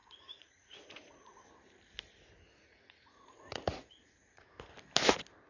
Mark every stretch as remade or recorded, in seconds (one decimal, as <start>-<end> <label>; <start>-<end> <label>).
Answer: 0.0-1.5 remade; 1.5-2.5 recorded; 2.5-4.4 remade; 4.4-5.5 recorded